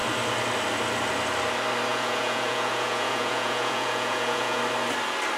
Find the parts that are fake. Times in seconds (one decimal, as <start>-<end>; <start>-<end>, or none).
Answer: 1.9-4.6